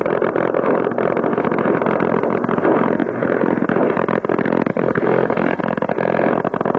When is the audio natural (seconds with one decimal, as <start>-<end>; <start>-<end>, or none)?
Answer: 0.0-4.7; 5.6-6.8